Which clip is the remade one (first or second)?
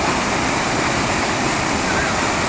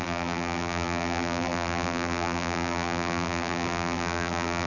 second